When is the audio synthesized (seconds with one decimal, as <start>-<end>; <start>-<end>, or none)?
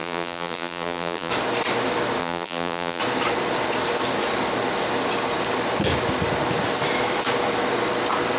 0.0-1.3; 2.2-3.0